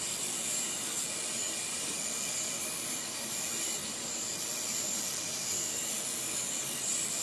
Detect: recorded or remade recorded